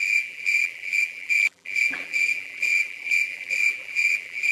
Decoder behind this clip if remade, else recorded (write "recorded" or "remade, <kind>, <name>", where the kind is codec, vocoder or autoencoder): remade, vocoder, BigVGAN v2